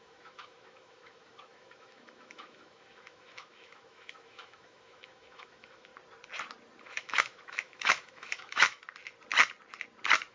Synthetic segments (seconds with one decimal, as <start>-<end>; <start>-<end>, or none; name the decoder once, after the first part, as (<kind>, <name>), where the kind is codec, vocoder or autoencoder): 0.0-5.9 (autoencoder, DAC-VAE); 6.8-8.8